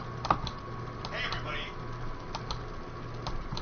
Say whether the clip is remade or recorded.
recorded